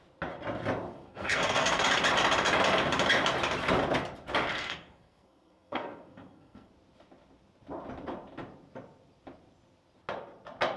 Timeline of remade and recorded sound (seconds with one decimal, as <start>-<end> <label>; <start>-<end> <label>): 0.0-0.9 recorded; 0.9-1.8 remade; 1.8-4.5 recorded; 4.5-6.7 remade; 6.7-10.8 recorded

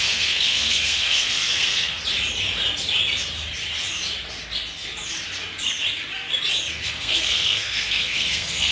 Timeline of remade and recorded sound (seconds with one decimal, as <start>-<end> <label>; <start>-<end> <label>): 0.0-2.0 remade; 2.0-6.7 recorded; 6.7-8.7 remade

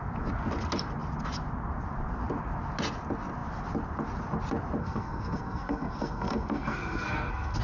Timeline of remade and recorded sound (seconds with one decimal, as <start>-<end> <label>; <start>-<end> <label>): 0.0-4.8 recorded; 4.8-7.6 remade

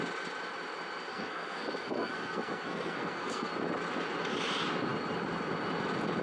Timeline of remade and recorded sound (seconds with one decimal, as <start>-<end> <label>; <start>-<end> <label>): 0.0-1.1 recorded; 1.1-3.5 remade; 3.5-6.2 recorded